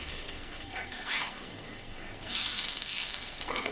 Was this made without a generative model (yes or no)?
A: no